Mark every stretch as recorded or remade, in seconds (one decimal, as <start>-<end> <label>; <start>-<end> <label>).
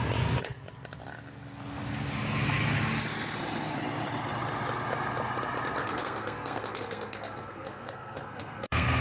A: 0.0-5.8 recorded; 5.8-9.0 remade